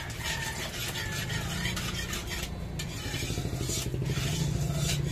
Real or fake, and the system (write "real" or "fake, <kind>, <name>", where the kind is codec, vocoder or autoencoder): real